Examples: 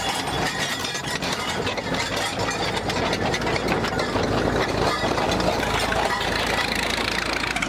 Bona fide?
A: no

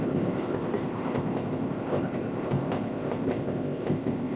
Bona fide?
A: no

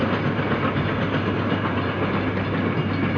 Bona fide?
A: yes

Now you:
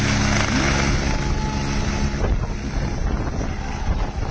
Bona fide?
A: yes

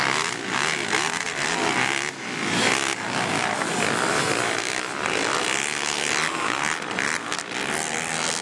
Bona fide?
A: yes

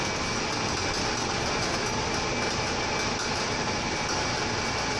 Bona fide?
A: yes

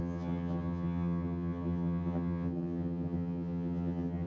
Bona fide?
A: no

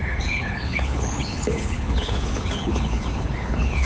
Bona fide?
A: no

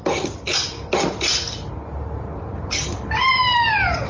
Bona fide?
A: yes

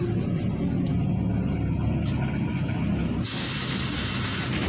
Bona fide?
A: yes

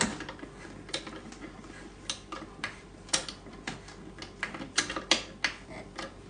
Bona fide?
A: yes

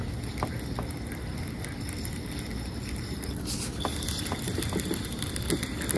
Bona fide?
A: yes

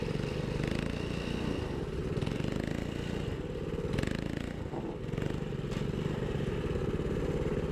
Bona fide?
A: yes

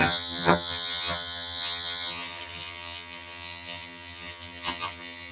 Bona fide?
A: no